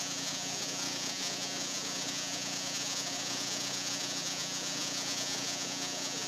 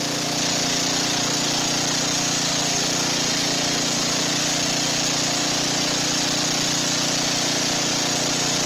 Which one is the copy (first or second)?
first